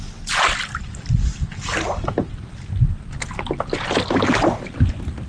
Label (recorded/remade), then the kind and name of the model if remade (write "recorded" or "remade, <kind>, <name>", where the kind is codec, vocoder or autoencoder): recorded